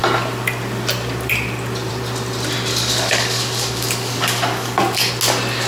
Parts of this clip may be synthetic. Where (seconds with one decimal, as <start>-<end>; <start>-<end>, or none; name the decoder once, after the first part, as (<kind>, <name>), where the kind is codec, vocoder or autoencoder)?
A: 2.7-5.1 (codec, DAC)